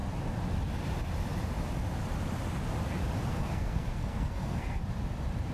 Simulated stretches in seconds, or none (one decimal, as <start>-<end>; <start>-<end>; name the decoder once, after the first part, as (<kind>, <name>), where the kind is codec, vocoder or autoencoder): 3.3-4.8 (codec, SNAC)